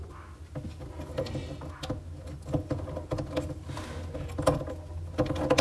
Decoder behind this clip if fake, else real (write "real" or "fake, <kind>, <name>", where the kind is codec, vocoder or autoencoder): real